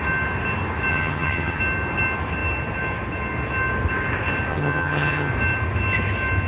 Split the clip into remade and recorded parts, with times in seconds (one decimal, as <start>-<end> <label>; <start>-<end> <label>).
0.0-0.9 recorded; 0.9-1.6 remade; 1.6-4.5 recorded; 4.5-5.3 remade; 5.3-6.5 recorded

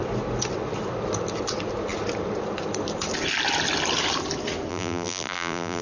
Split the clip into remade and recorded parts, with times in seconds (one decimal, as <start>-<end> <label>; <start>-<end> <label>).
0.0-4.7 recorded; 4.7-5.8 remade

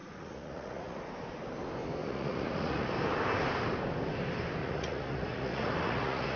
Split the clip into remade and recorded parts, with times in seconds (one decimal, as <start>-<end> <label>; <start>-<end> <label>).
0.0-1.1 remade; 1.1-2.0 recorded; 2.0-2.9 remade; 2.9-4.6 recorded; 4.6-6.4 remade

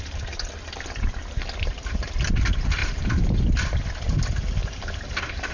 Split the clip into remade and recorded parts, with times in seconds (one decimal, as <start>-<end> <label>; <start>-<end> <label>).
0.0-2.8 recorded; 2.8-3.4 remade; 3.4-4.6 recorded; 4.6-5.5 remade

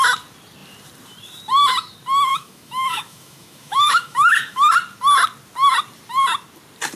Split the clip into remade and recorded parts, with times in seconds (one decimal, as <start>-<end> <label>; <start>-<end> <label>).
0.0-2.3 recorded; 2.3-4.7 remade; 4.7-7.0 recorded

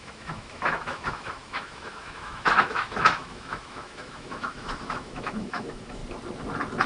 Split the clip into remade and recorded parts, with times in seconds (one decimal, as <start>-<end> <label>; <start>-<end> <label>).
0.0-6.0 remade; 6.0-6.9 recorded

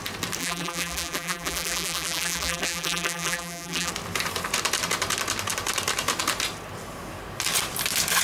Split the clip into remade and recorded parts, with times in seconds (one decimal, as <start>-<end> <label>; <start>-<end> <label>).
0.0-0.4 recorded; 0.4-3.9 remade; 3.9-8.2 recorded

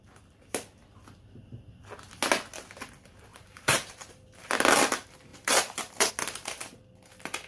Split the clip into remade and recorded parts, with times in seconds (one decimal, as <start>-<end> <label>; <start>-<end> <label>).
0.0-3.3 recorded; 3.3-4.1 remade; 4.1-5.3 recorded; 5.3-6.1 remade; 6.1-7.5 recorded